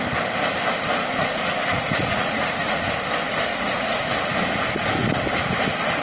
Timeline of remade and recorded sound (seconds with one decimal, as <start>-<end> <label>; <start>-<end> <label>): 0.0-1.0 recorded; 1.0-2.9 remade; 2.9-3.5 recorded; 3.5-4.1 remade; 4.1-6.0 recorded